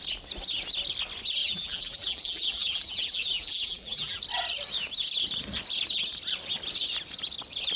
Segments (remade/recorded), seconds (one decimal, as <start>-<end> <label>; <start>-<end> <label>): 0.0-1.4 recorded; 1.4-4.2 remade; 4.2-7.8 recorded